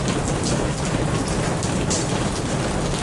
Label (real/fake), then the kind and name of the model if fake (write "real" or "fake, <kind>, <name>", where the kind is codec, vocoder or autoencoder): real